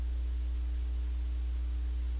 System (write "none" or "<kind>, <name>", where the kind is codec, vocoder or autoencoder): none